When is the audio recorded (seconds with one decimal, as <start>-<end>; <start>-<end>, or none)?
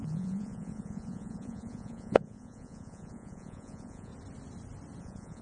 4.1-5.0